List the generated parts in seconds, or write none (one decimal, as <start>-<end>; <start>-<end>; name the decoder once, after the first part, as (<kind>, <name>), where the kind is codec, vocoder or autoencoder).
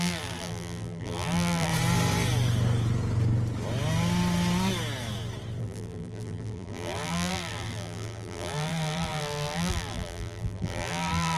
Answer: 0.0-1.7 (vocoder, BigVGAN v2); 5.6-11.4